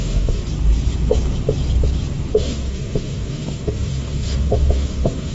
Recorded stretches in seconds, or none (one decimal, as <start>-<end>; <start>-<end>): 0.4-2.3